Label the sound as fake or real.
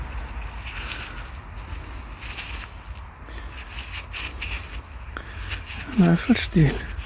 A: real